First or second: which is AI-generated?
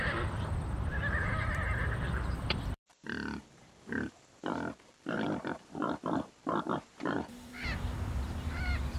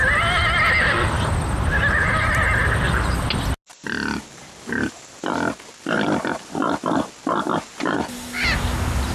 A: first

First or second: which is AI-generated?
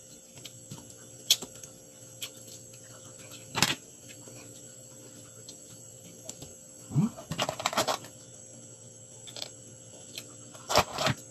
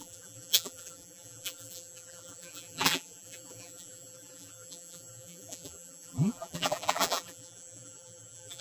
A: second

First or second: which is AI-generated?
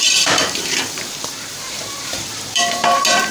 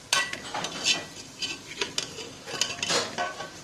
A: first